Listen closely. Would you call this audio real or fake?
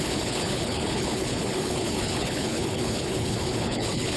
fake